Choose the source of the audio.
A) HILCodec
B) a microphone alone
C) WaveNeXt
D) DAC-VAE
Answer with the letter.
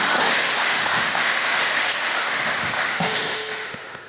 D